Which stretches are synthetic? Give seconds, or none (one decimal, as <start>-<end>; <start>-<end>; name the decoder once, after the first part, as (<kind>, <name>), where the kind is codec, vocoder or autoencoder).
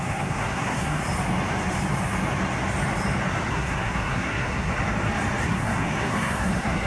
0.0-1.0 (codec, SNAC); 3.5-4.7; 5.4-6.9